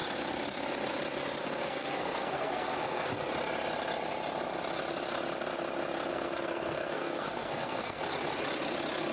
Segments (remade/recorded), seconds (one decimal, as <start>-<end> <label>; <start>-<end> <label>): 0.0-1.4 recorded; 1.4-3.1 remade; 3.1-6.1 recorded; 6.1-8.0 remade; 8.0-9.1 recorded